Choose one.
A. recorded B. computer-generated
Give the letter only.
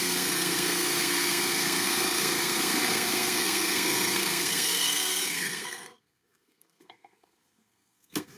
B